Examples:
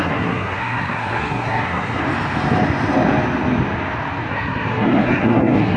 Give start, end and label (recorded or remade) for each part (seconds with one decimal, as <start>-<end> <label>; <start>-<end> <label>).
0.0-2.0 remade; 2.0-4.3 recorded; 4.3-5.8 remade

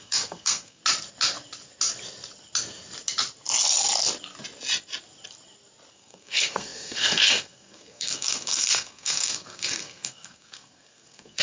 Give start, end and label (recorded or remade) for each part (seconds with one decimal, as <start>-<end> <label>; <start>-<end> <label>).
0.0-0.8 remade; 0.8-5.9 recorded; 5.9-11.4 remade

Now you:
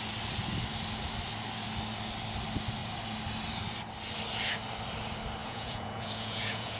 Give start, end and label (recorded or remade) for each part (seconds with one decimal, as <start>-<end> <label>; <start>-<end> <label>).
0.0-5.4 recorded; 5.4-6.8 remade